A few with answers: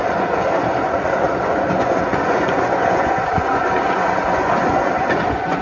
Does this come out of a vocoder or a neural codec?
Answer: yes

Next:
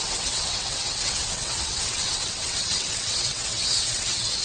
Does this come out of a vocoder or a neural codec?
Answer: yes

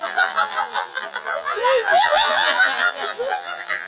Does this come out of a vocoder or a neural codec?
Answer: yes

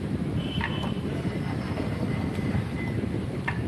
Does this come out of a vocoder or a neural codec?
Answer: yes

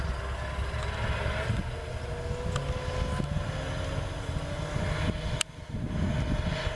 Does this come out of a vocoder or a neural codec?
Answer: no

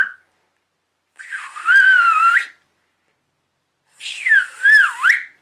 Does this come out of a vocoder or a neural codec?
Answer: no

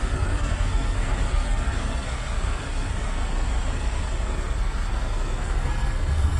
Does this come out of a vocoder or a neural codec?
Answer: yes